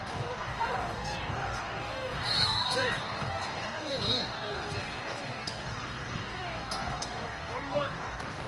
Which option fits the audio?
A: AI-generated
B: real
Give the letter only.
A